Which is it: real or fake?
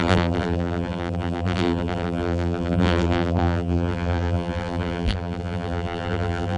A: fake